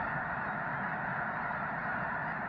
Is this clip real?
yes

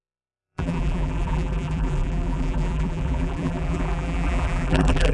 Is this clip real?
no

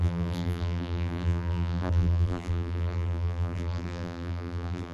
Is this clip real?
no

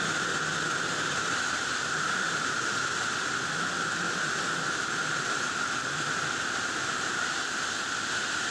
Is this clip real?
yes